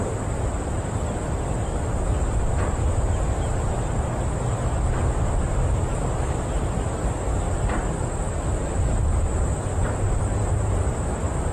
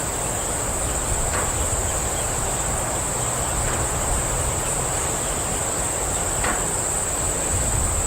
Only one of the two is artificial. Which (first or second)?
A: first